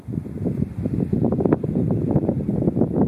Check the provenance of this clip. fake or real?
real